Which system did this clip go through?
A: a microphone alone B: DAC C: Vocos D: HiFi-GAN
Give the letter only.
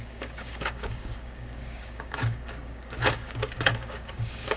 B